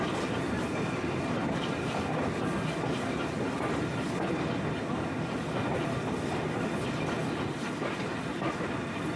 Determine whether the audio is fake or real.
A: real